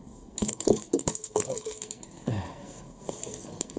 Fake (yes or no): yes